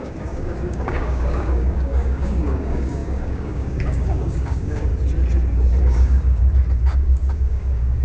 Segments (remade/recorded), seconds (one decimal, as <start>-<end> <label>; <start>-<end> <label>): 0.0-4.9 remade; 4.9-5.8 recorded; 5.8-6.4 remade; 6.4-6.9 recorded; 6.9-8.0 remade